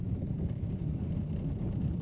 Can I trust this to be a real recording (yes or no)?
yes